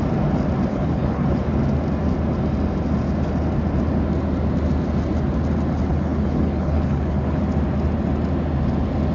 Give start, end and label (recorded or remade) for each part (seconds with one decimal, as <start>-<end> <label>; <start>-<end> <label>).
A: 0.0-0.7 recorded; 0.7-1.4 remade; 1.4-5.9 recorded; 5.9-7.4 remade; 7.4-9.1 recorded